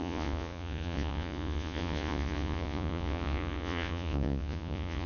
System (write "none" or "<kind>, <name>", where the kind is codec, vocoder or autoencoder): vocoder, Vocos